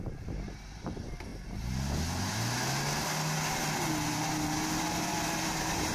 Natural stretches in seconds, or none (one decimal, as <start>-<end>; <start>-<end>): 1.3-4.8